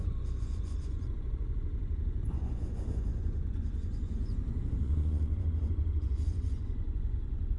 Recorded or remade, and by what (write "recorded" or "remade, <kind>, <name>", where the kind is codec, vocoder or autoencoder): remade, vocoder, Vocos